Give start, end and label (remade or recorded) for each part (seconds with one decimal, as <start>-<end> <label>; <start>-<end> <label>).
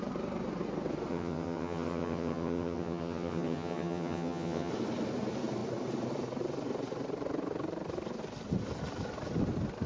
0.0-1.1 recorded; 1.1-4.7 remade; 4.7-9.9 recorded